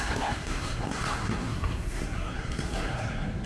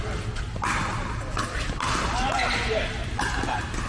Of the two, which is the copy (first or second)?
first